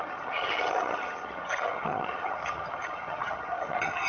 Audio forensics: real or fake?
fake